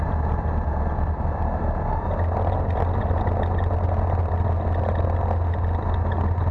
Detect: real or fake real